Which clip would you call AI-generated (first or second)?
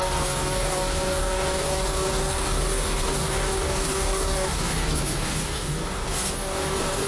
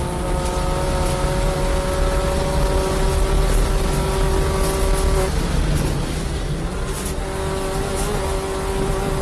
first